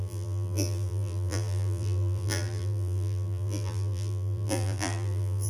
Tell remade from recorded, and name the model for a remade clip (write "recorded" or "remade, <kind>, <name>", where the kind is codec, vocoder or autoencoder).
remade, vocoder, BigVGAN v2